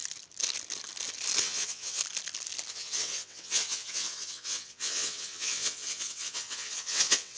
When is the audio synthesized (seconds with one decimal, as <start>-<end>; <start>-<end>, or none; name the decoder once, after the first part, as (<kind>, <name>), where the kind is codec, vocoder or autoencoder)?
1.4-2.0 (vocoder, WaveNeXt); 2.7-7.4